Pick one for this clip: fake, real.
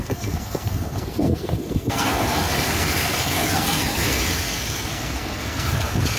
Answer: fake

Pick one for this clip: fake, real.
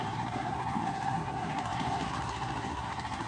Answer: fake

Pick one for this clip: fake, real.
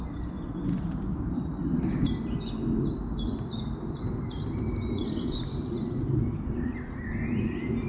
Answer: real